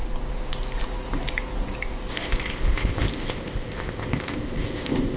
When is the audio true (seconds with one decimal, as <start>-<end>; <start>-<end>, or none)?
0.0-2.1